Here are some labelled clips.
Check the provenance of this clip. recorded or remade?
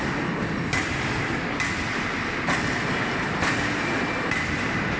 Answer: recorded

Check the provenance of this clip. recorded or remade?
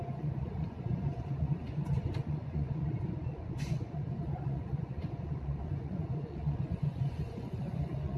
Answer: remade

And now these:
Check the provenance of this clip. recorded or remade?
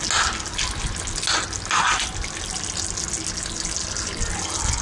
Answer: recorded